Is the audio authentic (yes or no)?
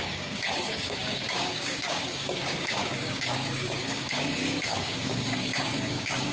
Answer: no